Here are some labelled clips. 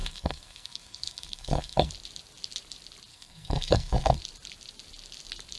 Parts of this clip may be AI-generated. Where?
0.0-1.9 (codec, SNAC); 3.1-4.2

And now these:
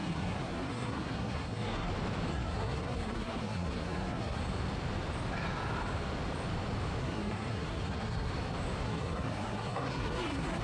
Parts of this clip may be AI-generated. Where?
0.0-1.9 (codec, SNAC); 2.3-4.4; 7.0-8.3; 8.8-10.6

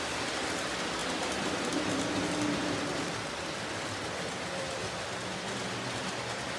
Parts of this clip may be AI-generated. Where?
none

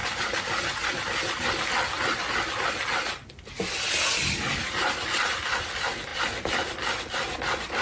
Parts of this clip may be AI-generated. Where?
none

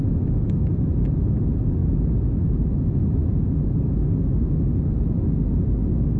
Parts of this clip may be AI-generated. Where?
none

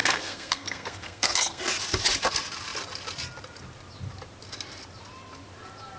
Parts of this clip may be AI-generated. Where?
0.0-1.6 (codec, SNAC)